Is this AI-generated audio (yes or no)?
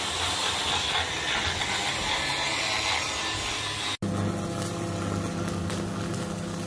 no